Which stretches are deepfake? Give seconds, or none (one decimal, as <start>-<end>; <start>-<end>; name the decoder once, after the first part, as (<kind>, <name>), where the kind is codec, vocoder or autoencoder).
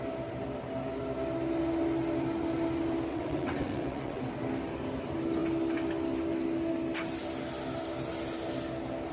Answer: 3.1-4.2 (vocoder, WaveNeXt)